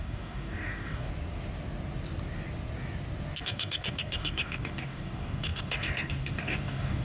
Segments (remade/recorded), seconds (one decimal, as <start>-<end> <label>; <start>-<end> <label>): 0.0-1.1 remade; 1.1-3.4 recorded; 3.4-7.0 remade